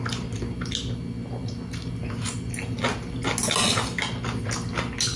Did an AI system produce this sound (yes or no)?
no